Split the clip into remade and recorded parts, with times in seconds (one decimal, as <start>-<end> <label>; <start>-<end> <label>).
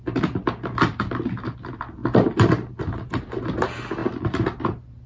0.0-5.1 recorded